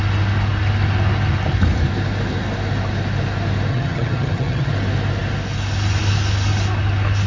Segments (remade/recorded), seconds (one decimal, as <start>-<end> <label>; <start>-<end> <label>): 0.0-3.7 recorded; 3.7-4.7 remade; 4.7-7.3 recorded